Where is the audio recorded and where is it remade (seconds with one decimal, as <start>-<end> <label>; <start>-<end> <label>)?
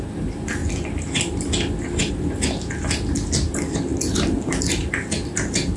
0.0-5.8 recorded